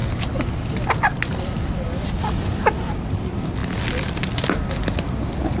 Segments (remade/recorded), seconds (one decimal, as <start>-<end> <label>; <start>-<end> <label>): 0.0-5.6 recorded